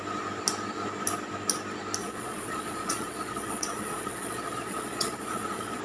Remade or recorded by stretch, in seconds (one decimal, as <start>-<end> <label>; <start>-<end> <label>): 0.0-2.0 recorded; 2.0-5.8 remade